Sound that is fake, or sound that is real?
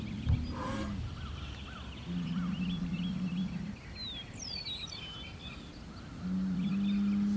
real